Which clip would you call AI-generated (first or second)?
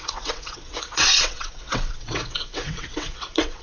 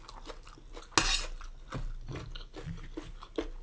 first